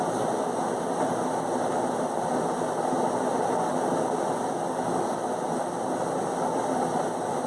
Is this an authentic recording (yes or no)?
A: yes